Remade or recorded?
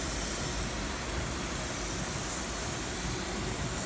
recorded